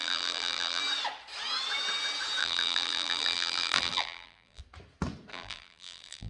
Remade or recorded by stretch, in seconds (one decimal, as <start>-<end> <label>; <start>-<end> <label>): 0.0-0.8 remade; 0.8-2.4 recorded; 2.4-4.6 remade; 4.6-5.3 recorded; 5.3-6.3 remade